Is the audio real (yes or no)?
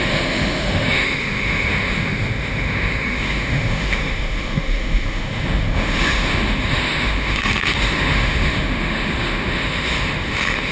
no